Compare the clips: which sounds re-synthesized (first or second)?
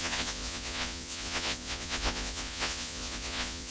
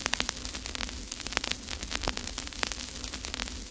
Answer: first